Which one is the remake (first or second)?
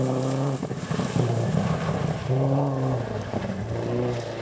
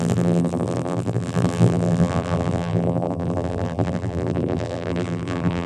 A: second